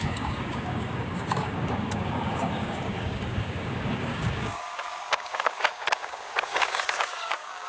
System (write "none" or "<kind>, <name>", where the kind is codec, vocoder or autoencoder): codec, DAC